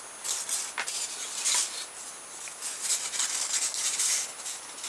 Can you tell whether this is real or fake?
real